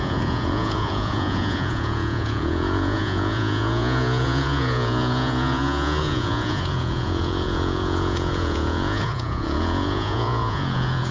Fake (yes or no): yes